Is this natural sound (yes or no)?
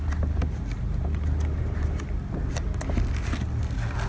yes